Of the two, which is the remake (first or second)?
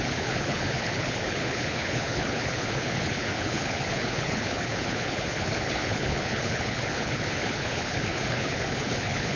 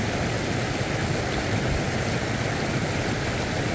first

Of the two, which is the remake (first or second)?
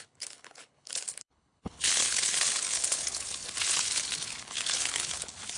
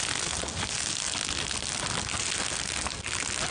first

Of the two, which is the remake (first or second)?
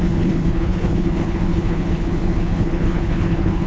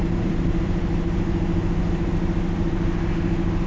first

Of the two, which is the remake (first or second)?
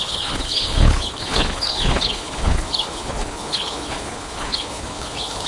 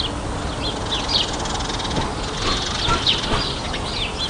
first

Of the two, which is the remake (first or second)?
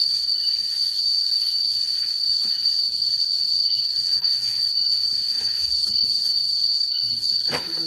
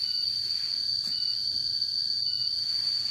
first